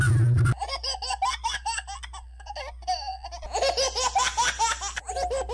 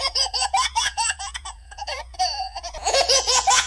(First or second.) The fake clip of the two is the second